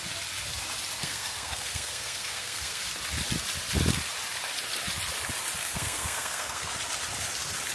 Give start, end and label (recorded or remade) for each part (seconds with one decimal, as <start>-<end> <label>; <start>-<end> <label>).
0.0-1.0 recorded; 1.0-2.8 remade; 2.8-5.6 recorded; 5.6-6.7 remade; 6.7-7.7 recorded